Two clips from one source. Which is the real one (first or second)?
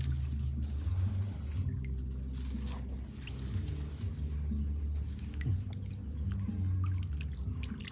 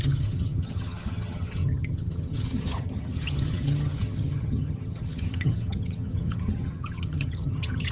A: first